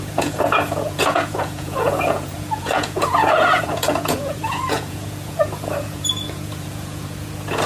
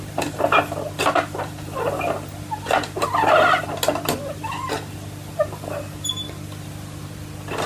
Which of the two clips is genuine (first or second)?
second